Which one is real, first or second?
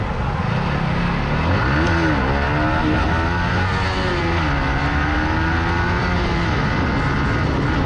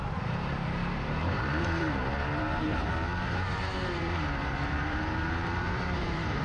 first